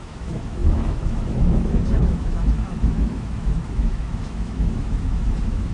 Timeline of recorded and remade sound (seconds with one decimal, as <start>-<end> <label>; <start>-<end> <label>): 0.0-5.7 remade